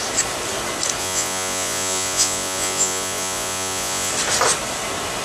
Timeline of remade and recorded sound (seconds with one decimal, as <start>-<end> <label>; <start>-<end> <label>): 0.0-1.0 recorded; 1.0-4.1 remade; 4.1-5.2 recorded